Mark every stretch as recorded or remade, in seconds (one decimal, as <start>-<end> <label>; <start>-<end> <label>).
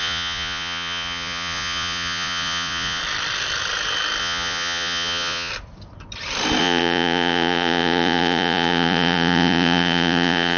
0.0-3.0 remade; 3.0-4.2 recorded; 4.2-5.5 remade; 5.5-6.6 recorded; 6.6-10.6 remade